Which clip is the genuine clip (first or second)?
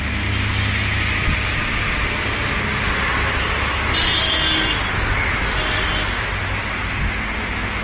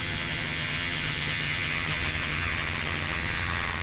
first